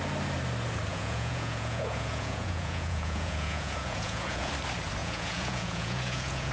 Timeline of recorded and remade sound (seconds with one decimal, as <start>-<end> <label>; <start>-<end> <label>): 0.0-0.9 recorded; 0.9-4.5 remade; 4.5-5.0 recorded; 5.0-6.5 remade